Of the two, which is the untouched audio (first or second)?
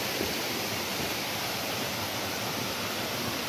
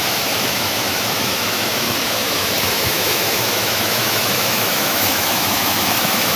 first